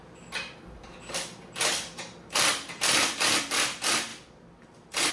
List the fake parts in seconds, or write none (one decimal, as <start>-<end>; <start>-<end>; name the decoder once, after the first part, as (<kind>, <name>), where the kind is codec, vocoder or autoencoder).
none